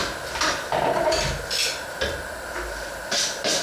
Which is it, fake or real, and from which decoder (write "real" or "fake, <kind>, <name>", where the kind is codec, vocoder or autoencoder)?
real